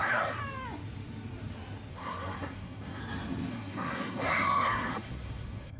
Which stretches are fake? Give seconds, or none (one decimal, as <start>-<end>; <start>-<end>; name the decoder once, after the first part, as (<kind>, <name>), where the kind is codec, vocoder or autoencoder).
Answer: 0.0-0.4 (codec, SNAC); 1.9-3.0; 3.5-5.8